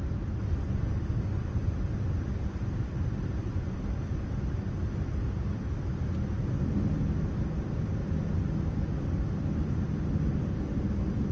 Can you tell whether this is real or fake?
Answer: real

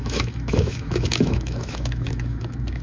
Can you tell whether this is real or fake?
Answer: fake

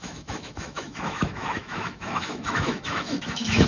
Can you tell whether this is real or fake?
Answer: fake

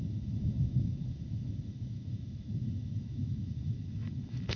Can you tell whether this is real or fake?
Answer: fake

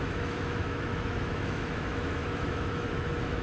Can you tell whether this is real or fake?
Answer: fake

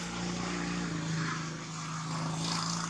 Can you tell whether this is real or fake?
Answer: real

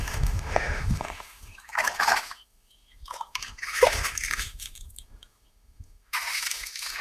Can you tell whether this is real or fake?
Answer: fake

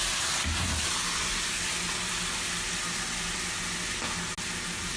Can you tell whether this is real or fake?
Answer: real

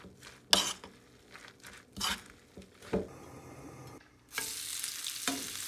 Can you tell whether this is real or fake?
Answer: real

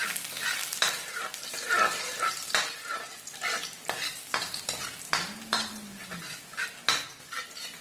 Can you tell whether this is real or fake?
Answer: real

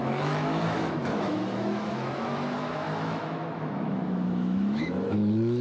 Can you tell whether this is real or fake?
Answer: fake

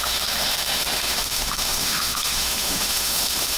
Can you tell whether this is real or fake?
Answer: fake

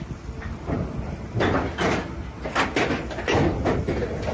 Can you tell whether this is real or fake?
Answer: real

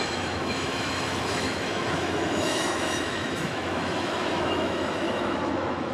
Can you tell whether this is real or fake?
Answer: fake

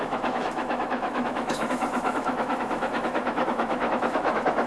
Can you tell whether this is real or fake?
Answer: fake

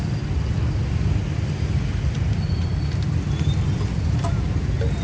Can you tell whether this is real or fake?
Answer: real